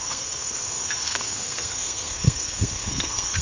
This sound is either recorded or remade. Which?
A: remade